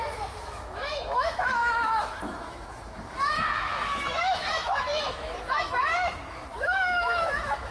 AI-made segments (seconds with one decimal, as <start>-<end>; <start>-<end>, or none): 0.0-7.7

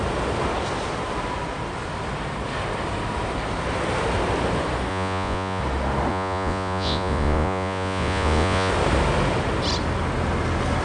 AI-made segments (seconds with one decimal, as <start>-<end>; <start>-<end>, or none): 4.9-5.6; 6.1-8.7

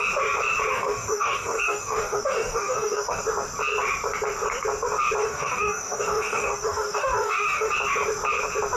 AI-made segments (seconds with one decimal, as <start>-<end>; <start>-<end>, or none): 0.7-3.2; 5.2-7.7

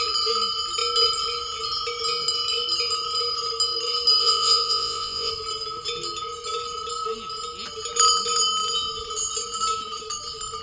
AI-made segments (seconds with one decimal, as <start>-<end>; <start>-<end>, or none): 4.2-5.3

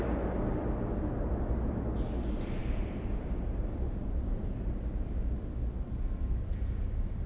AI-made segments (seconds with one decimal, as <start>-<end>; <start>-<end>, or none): 2.6-5.4

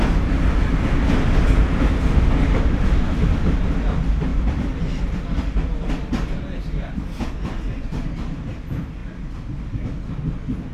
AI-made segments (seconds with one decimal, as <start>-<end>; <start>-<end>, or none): none